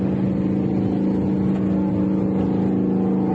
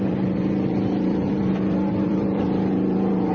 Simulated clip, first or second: second